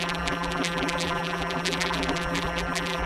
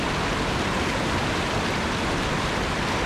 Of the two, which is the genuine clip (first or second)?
second